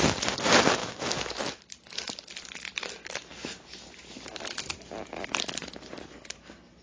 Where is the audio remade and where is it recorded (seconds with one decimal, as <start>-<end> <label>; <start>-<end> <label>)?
0.0-0.8 recorded; 0.8-1.6 remade; 1.6-6.8 recorded